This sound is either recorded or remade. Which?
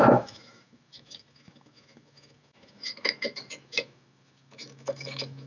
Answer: remade